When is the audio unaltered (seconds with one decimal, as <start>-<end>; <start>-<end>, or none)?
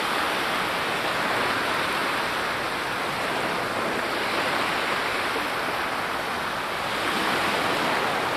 0.0-8.4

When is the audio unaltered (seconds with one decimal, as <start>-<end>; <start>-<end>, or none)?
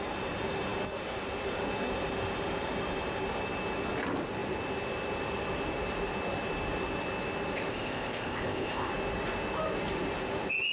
0.0-7.7; 8.9-10.7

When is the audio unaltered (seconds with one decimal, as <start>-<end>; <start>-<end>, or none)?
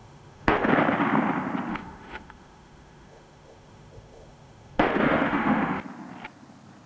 0.7-1.7; 5.8-6.9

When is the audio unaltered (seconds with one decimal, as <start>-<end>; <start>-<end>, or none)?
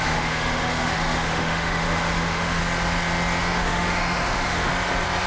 2.6-3.4; 4.7-5.3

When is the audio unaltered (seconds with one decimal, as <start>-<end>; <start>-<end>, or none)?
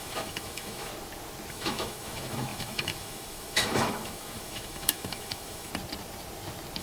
0.9-1.5; 5.7-6.8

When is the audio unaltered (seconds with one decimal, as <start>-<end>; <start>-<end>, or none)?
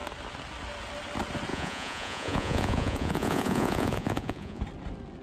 0.0-1.5; 4.6-5.2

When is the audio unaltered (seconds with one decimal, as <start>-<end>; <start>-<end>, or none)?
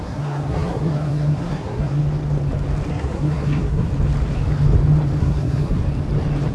2.0-2.9; 3.9-5.2; 5.8-6.5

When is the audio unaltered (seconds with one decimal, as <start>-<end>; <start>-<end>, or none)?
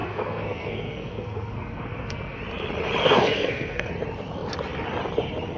2.4-3.0; 3.9-5.6